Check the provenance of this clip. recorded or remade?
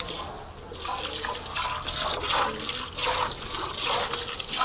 recorded